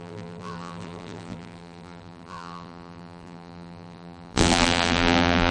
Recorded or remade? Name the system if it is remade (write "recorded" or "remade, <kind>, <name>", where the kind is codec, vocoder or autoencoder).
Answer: remade, vocoder, BigVGAN v2